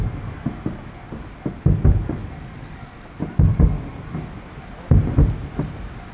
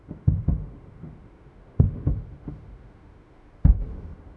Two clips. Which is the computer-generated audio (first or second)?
second